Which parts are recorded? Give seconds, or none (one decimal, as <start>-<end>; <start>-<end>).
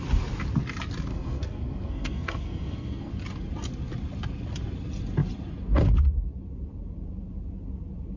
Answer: 0.0-1.1; 3.1-8.2